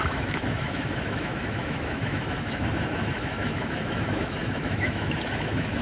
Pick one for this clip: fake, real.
fake